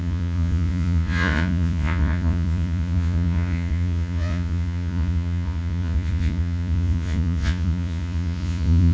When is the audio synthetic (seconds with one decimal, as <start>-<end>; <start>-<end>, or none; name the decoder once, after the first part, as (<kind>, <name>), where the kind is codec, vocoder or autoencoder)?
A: 0.0-8.9 (vocoder, Vocos)